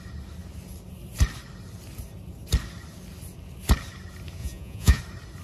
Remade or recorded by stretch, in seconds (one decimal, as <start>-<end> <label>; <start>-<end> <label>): 0.0-4.4 recorded; 4.4-5.0 remade; 5.0-5.4 recorded